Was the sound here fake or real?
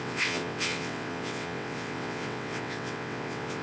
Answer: fake